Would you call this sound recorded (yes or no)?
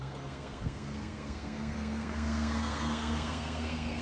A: no